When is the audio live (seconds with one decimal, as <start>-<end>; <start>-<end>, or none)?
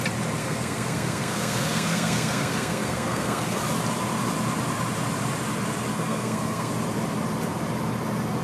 0.0-0.4; 3.6-5.9; 6.7-8.4